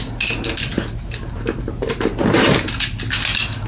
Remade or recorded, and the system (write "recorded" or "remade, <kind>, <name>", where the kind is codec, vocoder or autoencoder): recorded